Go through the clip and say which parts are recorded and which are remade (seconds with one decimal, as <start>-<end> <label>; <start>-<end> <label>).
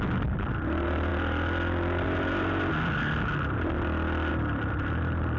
0.0-1.1 remade; 1.1-4.3 recorded; 4.3-5.4 remade